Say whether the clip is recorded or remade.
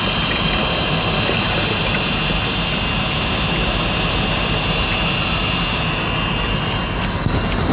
recorded